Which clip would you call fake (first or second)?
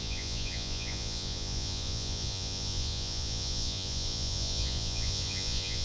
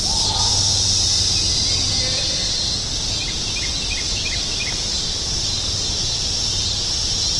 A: first